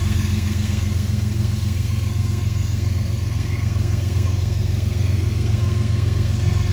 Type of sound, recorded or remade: remade